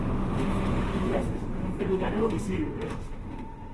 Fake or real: fake